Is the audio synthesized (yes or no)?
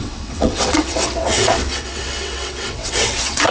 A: yes